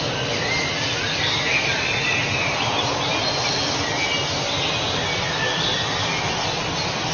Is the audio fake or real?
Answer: real